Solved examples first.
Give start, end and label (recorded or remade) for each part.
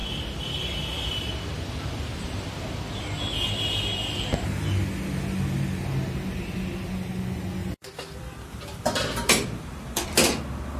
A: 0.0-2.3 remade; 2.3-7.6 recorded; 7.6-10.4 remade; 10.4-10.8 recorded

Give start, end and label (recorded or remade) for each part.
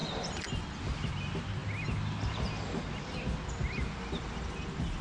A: 0.0-1.1 remade; 1.1-5.0 recorded